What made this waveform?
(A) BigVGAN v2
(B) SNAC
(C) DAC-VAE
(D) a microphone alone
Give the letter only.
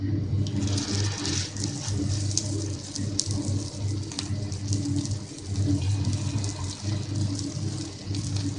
D